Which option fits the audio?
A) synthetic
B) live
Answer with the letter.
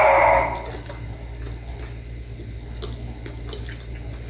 B